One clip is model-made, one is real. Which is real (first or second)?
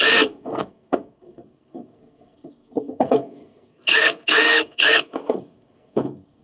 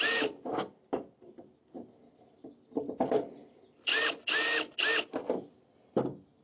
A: second